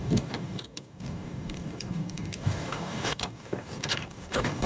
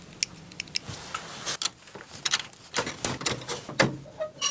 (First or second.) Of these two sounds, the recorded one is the second